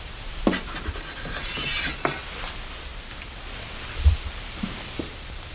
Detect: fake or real real